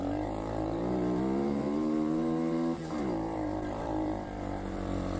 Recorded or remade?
remade